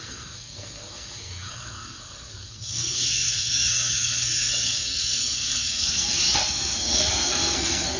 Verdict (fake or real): fake